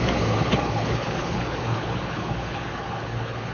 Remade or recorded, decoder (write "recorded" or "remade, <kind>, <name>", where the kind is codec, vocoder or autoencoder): remade, codec, HILCodec